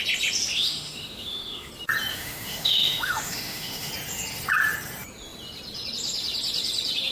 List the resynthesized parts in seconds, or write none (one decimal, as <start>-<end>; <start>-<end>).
0.5-1.7; 2.1-3.9